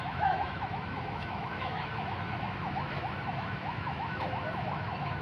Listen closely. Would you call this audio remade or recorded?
remade